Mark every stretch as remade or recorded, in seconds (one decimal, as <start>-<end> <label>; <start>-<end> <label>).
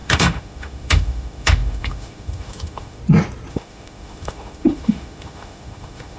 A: 0.0-3.0 remade; 3.0-3.5 recorded; 3.5-6.2 remade